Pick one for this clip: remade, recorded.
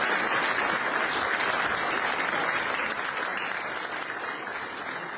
recorded